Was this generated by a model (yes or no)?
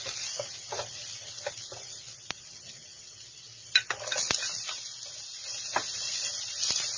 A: no